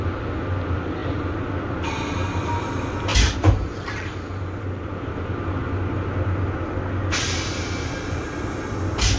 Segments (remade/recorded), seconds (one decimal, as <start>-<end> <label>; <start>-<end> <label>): 0.0-3.1 recorded; 3.1-5.1 remade; 5.1-9.2 recorded